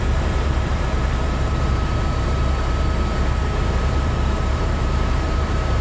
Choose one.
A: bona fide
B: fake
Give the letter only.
B